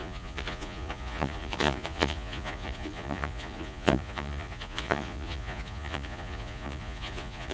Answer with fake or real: fake